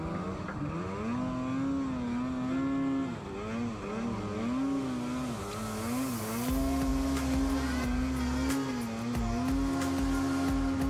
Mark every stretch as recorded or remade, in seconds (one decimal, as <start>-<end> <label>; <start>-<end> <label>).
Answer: 0.0-10.9 recorded